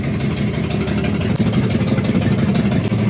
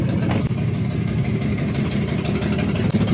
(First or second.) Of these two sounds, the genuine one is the first